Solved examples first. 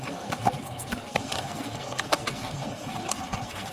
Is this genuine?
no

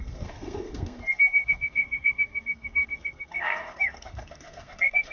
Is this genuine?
no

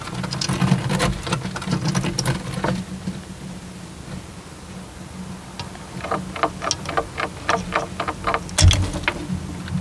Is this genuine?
yes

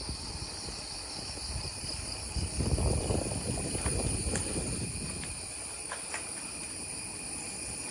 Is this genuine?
yes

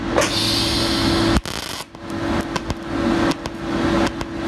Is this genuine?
yes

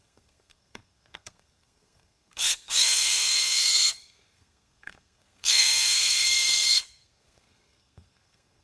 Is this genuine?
no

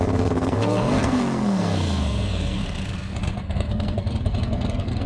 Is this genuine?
no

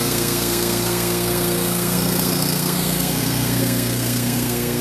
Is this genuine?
no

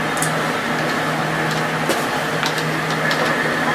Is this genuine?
yes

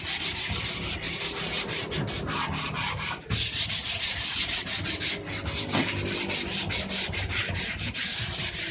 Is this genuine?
yes